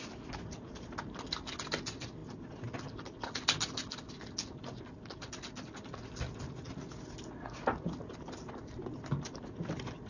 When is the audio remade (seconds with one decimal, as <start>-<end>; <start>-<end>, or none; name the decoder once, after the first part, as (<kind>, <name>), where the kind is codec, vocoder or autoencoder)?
none